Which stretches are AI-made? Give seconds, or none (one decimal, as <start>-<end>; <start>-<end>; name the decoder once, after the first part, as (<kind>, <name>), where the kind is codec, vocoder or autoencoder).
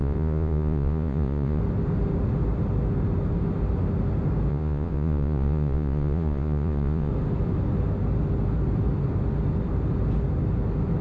0.0-1.6 (vocoder, Vocos); 4.5-7.1